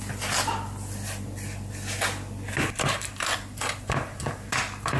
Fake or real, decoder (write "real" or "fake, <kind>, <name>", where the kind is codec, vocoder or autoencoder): real